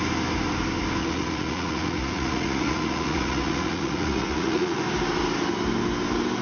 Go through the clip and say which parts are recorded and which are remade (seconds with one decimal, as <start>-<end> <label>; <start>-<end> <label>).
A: 0.0-1.0 recorded; 1.0-4.8 remade; 4.8-6.4 recorded